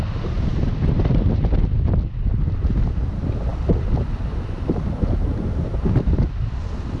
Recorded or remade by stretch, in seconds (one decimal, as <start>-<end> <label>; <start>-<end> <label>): 0.0-7.0 recorded